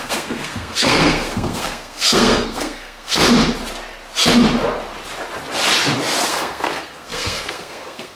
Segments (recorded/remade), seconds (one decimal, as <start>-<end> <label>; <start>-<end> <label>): 0.0-3.2 remade; 3.2-6.2 recorded; 6.2-8.2 remade